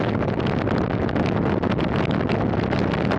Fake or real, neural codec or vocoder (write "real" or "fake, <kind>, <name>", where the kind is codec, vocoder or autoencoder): real